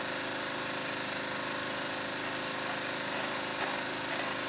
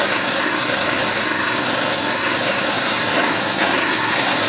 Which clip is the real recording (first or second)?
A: first